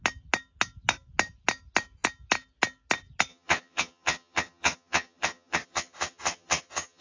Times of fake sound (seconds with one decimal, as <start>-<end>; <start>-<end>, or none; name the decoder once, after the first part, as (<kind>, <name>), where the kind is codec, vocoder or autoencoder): 3.3-7.0 (vocoder, HiFi-GAN)